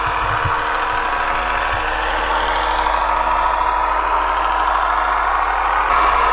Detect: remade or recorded recorded